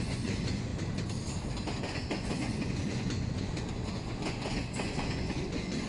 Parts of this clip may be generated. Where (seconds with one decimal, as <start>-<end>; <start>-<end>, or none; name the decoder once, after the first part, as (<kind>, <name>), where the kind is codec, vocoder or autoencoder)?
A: 0.0-0.7 (vocoder, Vocos); 1.8-5.9